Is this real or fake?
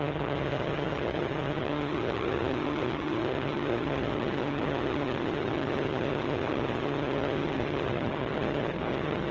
fake